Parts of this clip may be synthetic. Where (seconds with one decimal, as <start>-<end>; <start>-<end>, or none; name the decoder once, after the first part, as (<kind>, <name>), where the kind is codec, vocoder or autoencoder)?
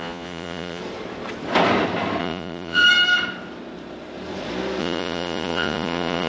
0.0-0.8 (vocoder, Vocos); 2.2-2.8; 4.8-6.3